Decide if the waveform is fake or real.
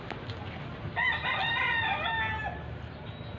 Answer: real